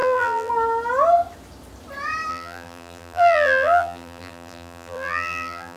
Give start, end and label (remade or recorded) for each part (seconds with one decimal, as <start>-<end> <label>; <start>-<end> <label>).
0.0-0.5 remade; 0.5-2.3 recorded; 2.3-5.8 remade